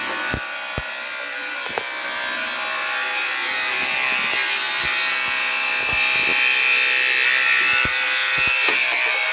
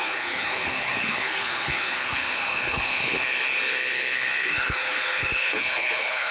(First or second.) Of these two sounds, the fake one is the second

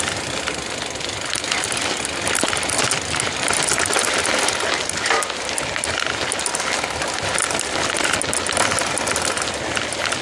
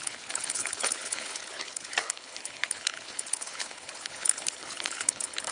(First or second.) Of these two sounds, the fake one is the second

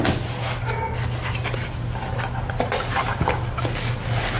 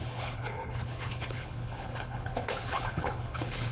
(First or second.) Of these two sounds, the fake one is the second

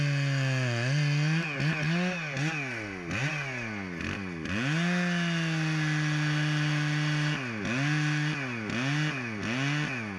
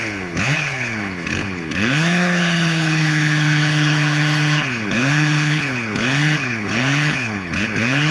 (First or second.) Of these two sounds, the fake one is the second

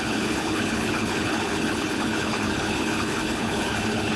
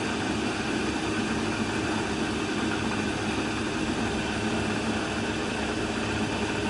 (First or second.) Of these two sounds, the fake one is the first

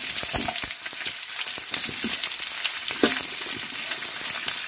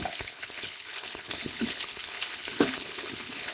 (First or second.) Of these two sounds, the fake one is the second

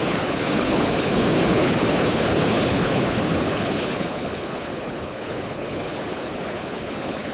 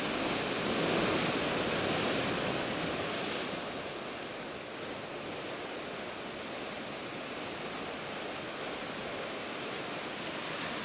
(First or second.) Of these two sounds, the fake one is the first